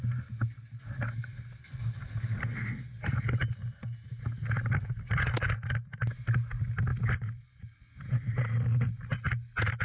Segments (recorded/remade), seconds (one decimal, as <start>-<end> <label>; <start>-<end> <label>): 0.0-6.9 recorded; 6.9-8.4 remade; 8.4-9.8 recorded